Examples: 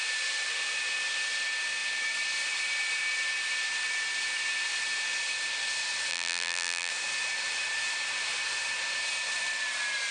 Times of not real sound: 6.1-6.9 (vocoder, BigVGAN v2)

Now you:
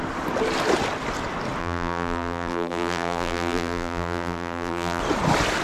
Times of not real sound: 1.6-5.0 (vocoder, BigVGAN v2)

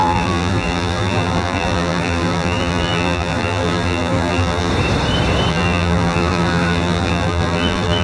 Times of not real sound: 0.0-4.7 (vocoder, BigVGAN v2); 5.5-8.0

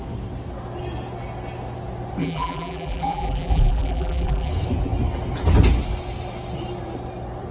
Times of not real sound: 2.2-4.5 (vocoder, BigVGAN v2)